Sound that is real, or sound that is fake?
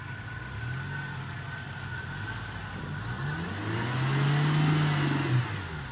real